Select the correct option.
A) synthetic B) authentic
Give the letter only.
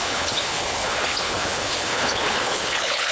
A